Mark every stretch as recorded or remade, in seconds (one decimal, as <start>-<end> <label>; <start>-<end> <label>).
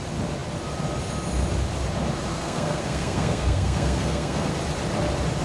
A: 0.0-2.3 recorded; 2.3-4.5 remade; 4.5-5.4 recorded